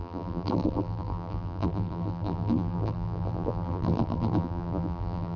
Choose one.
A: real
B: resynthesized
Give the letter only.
B